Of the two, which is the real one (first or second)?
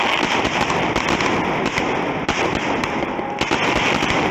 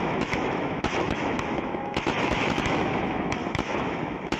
first